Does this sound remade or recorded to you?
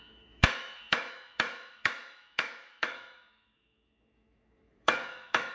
remade